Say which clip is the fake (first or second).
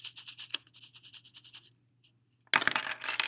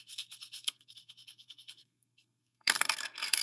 second